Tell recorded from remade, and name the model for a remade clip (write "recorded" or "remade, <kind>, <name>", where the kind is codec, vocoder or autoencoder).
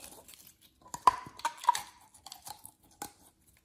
recorded